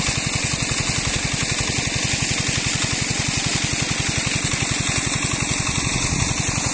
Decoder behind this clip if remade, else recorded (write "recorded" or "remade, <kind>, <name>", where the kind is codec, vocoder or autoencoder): recorded